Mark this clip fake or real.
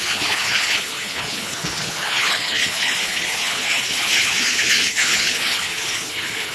fake